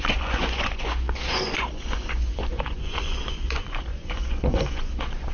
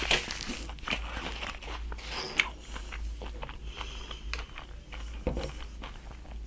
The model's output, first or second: first